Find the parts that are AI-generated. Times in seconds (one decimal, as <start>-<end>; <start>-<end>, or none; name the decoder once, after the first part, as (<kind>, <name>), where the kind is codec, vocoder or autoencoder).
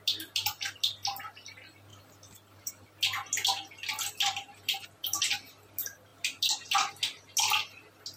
1.9-2.7 (vocoder, BigVGAN v2)